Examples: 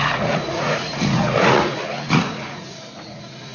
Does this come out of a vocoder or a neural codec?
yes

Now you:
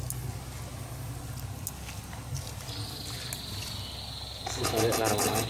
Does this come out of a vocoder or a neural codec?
no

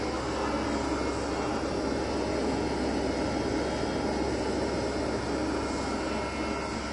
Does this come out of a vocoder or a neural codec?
no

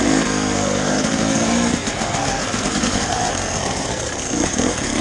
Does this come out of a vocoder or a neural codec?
yes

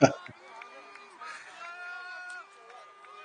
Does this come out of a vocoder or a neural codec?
no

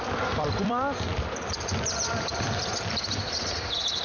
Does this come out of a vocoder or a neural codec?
yes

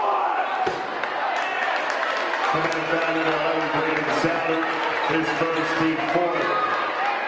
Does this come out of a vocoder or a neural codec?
no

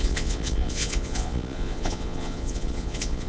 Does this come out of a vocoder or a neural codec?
yes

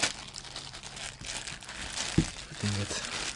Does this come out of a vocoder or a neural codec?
no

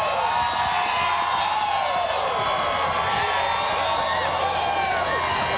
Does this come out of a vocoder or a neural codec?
no